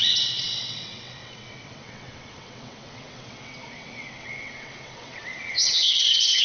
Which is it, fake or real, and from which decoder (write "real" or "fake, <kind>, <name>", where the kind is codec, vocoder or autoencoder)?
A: fake, vocoder, WaveNeXt